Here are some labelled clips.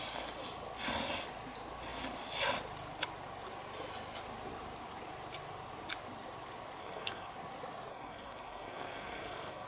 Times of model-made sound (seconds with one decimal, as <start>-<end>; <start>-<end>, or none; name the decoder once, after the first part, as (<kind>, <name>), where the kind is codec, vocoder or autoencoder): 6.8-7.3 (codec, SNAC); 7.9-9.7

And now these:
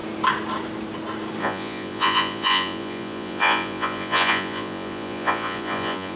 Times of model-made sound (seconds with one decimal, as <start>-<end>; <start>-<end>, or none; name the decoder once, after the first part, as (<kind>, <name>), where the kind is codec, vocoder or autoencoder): 1.4-6.2 (vocoder, Vocos)

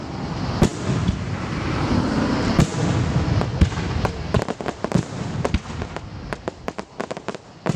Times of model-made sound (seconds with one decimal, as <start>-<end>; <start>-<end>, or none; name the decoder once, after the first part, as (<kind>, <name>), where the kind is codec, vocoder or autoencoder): 0.0-2.7 (vocoder, BigVGAN v2); 6.5-7.8